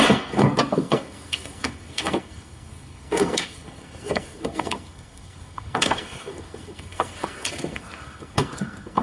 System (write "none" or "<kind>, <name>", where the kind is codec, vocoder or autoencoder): codec, SNAC